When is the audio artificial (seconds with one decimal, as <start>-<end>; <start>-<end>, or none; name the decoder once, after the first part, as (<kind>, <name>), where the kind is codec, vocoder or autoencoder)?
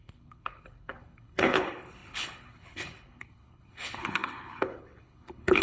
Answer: 0.0-5.6 (codec, HILCodec)